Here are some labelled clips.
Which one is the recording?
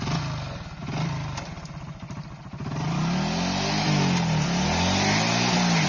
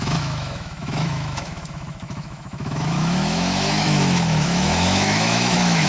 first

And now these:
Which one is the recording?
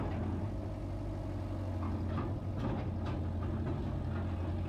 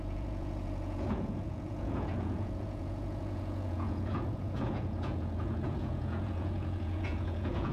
first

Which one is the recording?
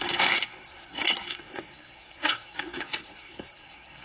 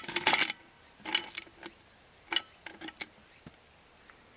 second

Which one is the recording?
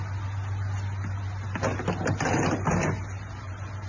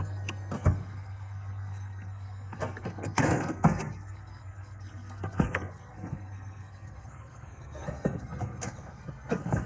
first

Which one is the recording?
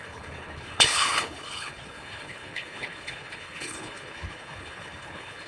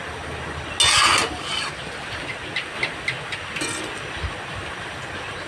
second